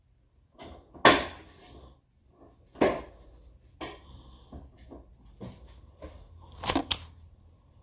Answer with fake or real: real